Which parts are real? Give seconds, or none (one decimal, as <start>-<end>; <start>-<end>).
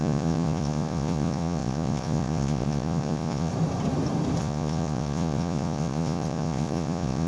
3.5-4.4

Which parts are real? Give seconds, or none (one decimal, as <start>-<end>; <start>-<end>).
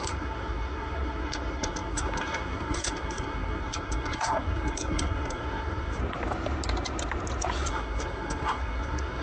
6.0-7.7